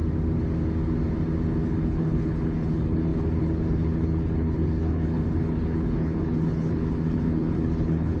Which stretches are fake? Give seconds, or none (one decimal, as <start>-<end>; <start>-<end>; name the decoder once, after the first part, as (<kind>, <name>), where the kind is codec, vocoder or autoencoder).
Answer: 1.8-8.2 (codec, HILCodec)